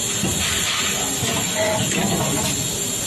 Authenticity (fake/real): real